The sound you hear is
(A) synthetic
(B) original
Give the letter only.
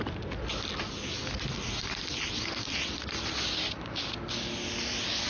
B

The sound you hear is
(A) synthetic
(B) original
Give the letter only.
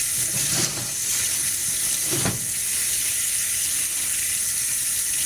B